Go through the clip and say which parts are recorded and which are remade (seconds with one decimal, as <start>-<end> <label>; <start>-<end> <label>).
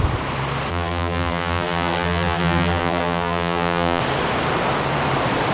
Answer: 0.0-0.7 recorded; 0.7-4.0 remade; 4.0-5.5 recorded